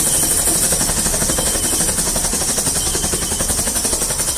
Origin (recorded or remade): recorded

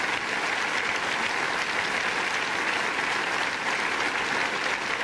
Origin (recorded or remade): recorded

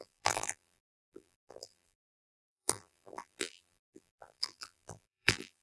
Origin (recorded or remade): remade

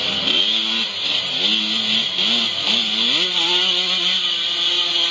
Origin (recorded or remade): recorded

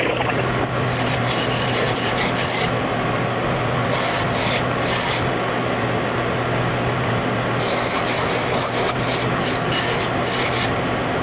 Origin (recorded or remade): recorded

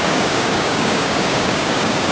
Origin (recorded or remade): remade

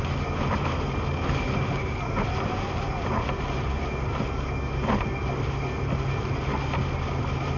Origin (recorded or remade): recorded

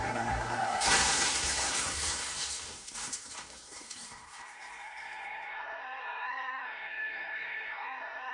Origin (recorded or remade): remade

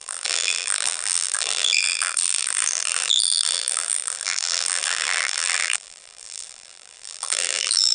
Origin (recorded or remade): remade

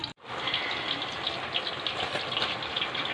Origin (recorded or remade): recorded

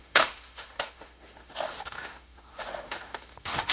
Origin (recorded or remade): remade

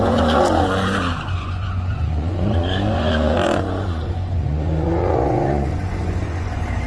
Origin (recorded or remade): remade